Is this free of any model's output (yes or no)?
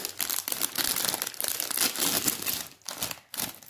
yes